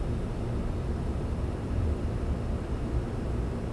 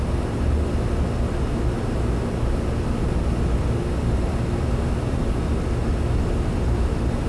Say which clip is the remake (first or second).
first